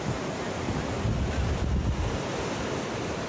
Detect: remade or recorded recorded